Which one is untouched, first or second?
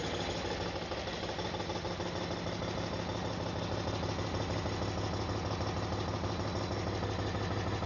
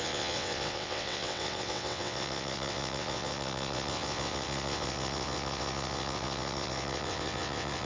first